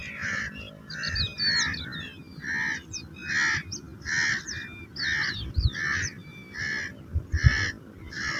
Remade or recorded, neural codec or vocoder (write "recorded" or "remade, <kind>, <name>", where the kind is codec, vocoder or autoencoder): recorded